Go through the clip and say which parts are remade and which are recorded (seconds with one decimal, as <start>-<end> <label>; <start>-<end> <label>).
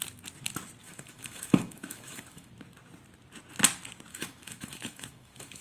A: 0.0-0.8 recorded; 0.8-2.5 remade; 2.5-4.1 recorded; 4.1-5.6 remade